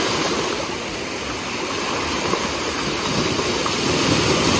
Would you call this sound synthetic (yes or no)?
no